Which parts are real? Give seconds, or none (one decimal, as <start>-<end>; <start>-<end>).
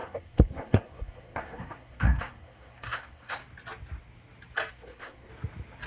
3.4-4.7; 5.3-5.9